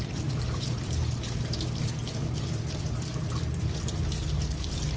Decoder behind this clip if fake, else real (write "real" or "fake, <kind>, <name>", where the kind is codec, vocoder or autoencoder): fake, vocoder, BigVGAN v2